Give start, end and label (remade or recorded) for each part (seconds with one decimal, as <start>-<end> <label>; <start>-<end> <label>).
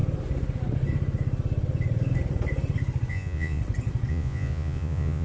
0.0-3.1 recorded; 3.1-3.6 remade; 3.6-4.1 recorded; 4.1-5.2 remade